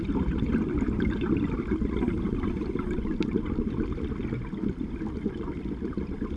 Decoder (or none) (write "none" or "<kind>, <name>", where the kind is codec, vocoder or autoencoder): none